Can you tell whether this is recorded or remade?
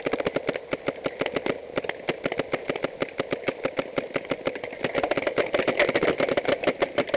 recorded